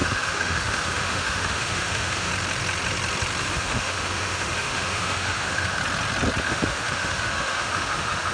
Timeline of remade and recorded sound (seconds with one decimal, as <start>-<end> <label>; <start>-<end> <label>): 0.0-2.3 remade; 2.3-3.4 recorded; 3.4-5.8 remade; 5.8-6.4 recorded; 6.4-8.3 remade